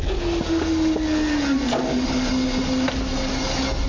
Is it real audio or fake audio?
real